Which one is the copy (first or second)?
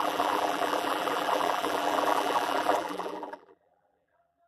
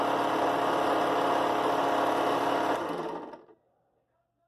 first